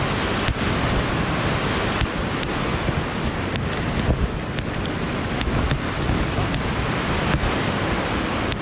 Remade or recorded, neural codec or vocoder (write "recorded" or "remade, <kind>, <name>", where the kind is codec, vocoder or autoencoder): recorded